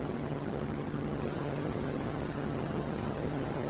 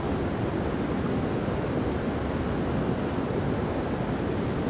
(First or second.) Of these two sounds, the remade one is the first